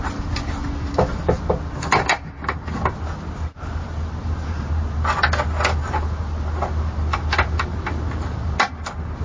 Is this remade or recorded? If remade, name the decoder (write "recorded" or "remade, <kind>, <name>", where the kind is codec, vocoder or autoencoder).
recorded